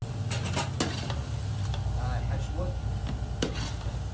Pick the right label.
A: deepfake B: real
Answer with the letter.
B